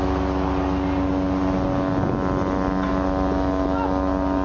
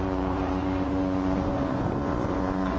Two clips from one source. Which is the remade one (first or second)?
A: second